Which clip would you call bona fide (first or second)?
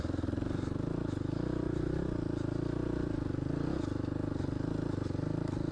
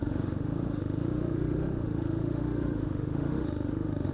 first